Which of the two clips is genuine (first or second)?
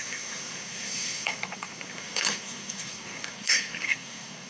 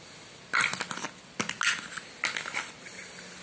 second